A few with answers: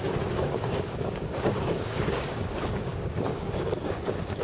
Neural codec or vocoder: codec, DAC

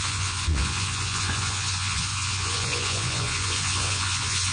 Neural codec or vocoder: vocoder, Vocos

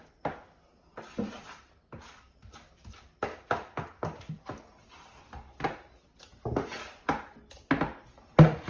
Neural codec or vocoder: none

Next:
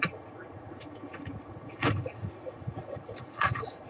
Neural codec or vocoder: vocoder, Vocos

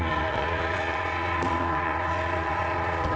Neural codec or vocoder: vocoder, Vocos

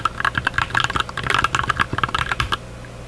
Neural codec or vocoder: none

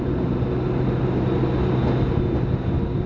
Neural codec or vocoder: none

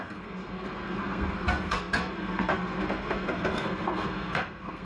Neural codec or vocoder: codec, SNAC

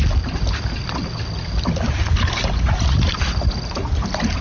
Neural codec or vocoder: none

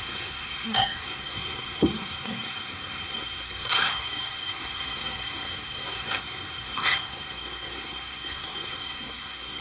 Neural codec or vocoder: codec, SNAC